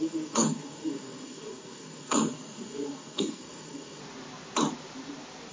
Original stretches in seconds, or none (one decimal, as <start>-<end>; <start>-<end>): 4.0-5.5